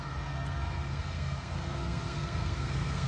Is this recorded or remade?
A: remade